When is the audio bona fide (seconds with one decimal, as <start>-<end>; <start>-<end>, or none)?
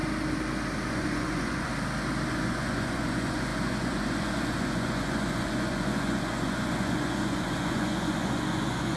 0.0-0.9; 1.7-2.3